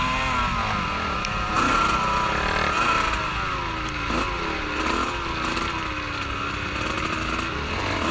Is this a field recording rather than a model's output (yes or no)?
yes